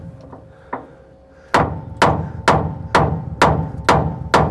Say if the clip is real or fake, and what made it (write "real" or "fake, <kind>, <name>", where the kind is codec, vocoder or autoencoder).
real